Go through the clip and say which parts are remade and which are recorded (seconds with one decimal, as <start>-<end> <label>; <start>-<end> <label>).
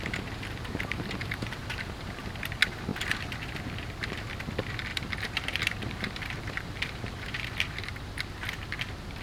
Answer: 0.0-1.6 recorded; 1.6-2.2 remade; 2.2-4.9 recorded; 4.9-8.1 remade; 8.1-9.2 recorded